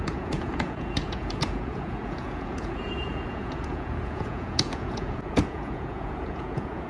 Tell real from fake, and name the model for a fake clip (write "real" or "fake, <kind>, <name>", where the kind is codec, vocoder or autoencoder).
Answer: fake, vocoder, Vocos